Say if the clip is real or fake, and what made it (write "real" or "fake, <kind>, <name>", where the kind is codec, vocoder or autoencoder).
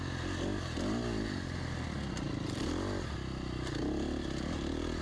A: real